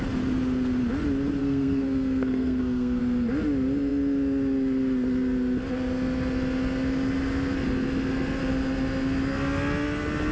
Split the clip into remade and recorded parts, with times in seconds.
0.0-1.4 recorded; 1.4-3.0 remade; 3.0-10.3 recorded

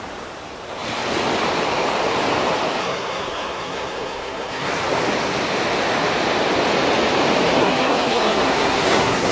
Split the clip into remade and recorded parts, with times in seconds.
0.0-2.8 recorded; 2.8-4.7 remade; 4.7-7.6 recorded; 7.6-9.3 remade

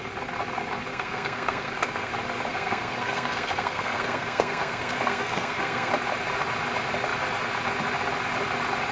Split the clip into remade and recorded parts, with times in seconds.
0.0-0.9 recorded; 0.9-2.1 remade; 2.1-2.5 recorded; 2.5-5.9 remade; 5.9-8.9 recorded

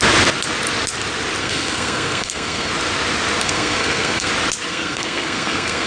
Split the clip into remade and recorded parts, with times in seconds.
0.0-1.4 recorded; 1.4-2.7 remade; 2.7-3.4 recorded; 3.4-4.3 remade; 4.3-4.7 recorded; 4.7-5.9 remade

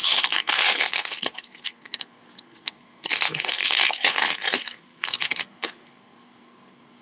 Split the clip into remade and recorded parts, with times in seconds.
0.0-7.0 remade

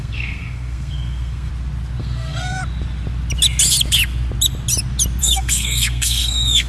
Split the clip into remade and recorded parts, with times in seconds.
0.0-1.5 remade; 1.5-2.0 recorded; 2.0-2.6 remade; 2.6-5.2 recorded; 5.2-6.7 remade